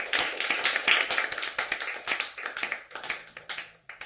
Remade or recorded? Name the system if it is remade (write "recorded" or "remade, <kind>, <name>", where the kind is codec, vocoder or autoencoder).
recorded